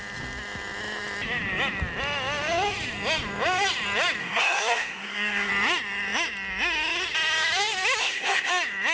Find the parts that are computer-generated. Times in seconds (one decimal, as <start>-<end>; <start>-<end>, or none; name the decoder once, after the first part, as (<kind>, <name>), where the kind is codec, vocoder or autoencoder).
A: 4.2-5.5 (codec, SNAC); 8.0-8.5